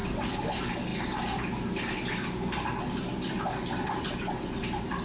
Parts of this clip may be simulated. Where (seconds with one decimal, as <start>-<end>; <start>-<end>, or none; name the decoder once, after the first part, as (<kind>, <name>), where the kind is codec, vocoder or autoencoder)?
none